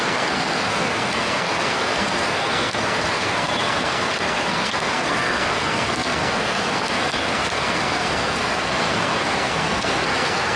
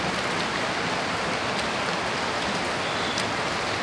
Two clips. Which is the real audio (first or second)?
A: second